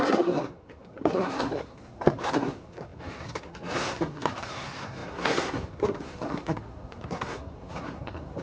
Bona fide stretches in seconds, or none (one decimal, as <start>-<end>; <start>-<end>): none